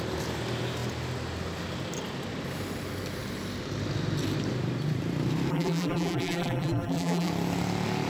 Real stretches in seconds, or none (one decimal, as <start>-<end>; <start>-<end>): 0.0-5.5; 7.3-8.1